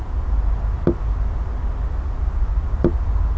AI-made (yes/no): no